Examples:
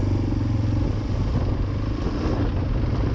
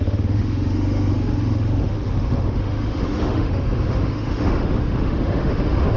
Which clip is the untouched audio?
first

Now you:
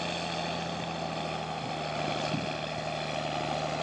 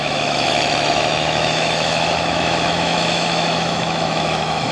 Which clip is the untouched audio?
first